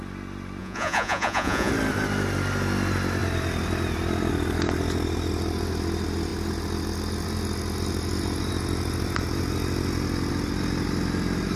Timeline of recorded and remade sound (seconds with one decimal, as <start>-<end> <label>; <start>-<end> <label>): 0.0-0.6 recorded; 0.6-1.7 remade; 1.7-11.6 recorded